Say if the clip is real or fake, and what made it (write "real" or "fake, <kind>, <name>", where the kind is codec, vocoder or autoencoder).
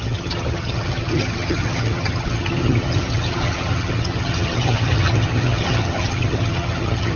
fake, vocoder, HiFi-GAN